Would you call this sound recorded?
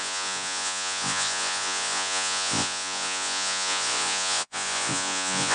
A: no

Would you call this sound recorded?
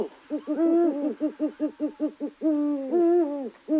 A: yes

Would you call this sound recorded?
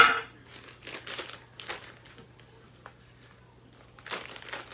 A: yes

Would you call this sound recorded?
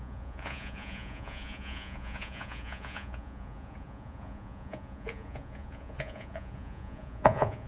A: no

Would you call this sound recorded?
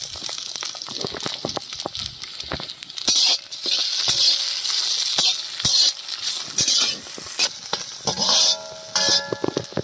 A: yes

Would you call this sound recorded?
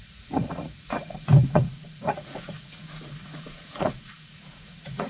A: no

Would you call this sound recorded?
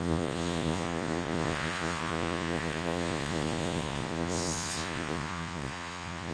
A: no